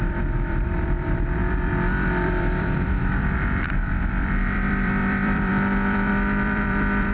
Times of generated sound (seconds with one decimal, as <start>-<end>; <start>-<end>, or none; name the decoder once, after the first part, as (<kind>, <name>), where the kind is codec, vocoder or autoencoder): 0.0-7.1 (vocoder, BigVGAN v2)